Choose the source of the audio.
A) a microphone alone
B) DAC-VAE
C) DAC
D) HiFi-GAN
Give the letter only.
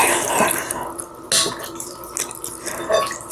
A